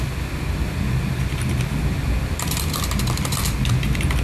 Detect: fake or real real